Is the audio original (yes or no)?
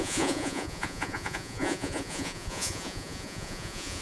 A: no